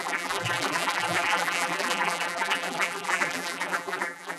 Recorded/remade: remade